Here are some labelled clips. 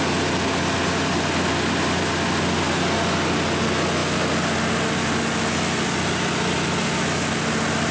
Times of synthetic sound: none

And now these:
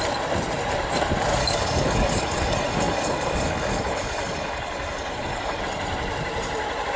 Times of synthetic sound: 1.4-5.6 (codec, DAC)

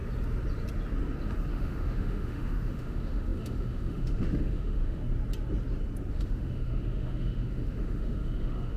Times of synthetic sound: 1.5-5.0 (autoencoder, DAC-VAE); 6.1-8.8

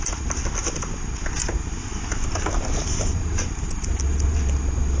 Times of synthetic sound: 1.4-4.4 (vocoder, BigVGAN v2)